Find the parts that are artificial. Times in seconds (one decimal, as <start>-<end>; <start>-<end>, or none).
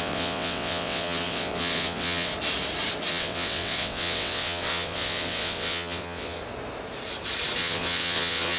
0.0-2.3; 3.1-6.4; 7.6-8.6